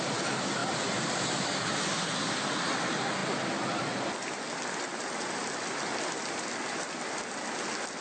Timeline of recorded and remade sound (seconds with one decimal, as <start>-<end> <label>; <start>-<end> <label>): 0.0-0.6 recorded; 0.6-2.3 remade; 2.3-3.2 recorded; 3.2-7.2 remade; 7.2-8.0 recorded

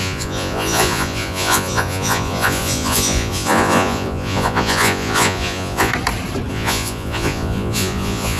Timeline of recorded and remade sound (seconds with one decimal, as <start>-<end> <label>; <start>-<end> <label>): 0.0-5.9 remade; 5.9-6.5 recorded; 6.5-8.4 remade

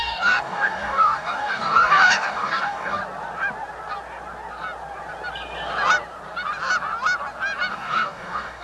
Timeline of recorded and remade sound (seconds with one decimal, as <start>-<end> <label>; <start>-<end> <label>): 0.0-3.0 remade; 3.0-7.7 recorded; 7.7-8.6 remade

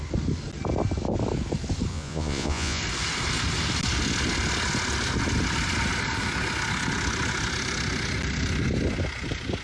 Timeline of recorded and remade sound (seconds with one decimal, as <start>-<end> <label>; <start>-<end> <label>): 0.0-1.9 recorded; 1.9-2.8 remade; 2.8-9.6 recorded

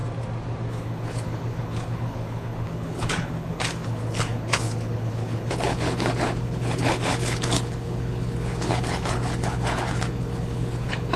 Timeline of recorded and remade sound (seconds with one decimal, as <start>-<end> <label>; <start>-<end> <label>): 0.0-0.7 recorded; 0.7-11.2 remade

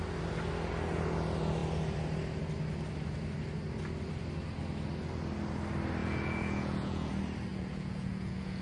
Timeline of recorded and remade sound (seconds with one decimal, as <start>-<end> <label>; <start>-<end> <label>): 0.0-6.0 recorded; 6.0-7.1 remade; 7.1-7.5 recorded; 7.5-8.6 remade

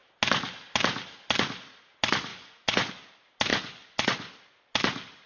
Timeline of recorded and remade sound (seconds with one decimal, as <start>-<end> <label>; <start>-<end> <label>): 0.0-2.3 recorded; 2.3-2.9 remade; 2.9-3.5 recorded; 3.5-4.3 remade; 4.3-5.3 recorded

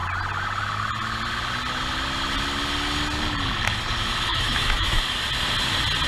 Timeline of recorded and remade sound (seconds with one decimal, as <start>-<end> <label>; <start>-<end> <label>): 0.0-4.3 recorded; 4.3-5.0 remade; 5.0-6.1 recorded